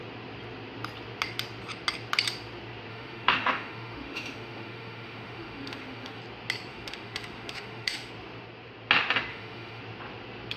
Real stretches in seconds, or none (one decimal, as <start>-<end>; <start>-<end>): 0.0-2.9; 6.2-6.7; 8.1-9.3; 9.8-10.6